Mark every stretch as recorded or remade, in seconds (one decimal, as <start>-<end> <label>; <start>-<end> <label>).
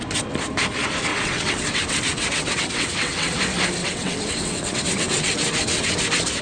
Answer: 0.0-1.1 recorded; 1.1-3.4 remade; 3.4-3.8 recorded; 3.8-6.0 remade; 6.0-6.4 recorded